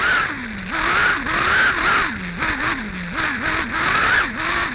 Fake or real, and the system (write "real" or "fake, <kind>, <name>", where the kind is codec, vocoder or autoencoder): real